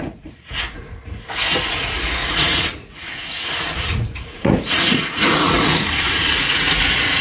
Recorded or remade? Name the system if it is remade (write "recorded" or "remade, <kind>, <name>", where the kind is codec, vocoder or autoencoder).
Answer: remade, vocoder, Vocos